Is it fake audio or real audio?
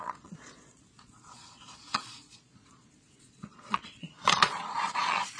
fake